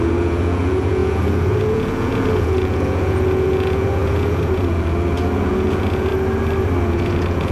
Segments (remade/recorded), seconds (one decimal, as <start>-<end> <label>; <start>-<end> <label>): 0.0-6.1 remade; 6.1-6.8 recorded; 6.8-7.5 remade